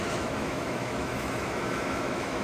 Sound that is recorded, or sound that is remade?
remade